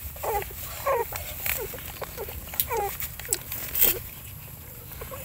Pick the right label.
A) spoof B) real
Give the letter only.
B